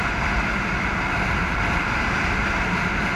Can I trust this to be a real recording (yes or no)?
yes